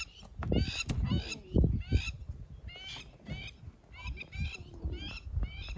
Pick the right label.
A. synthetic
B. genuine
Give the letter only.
B